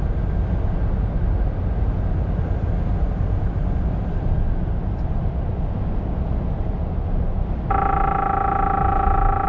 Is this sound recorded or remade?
recorded